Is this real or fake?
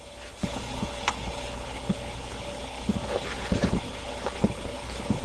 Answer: fake